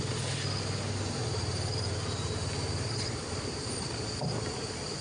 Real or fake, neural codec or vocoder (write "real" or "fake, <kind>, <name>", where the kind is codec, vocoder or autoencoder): real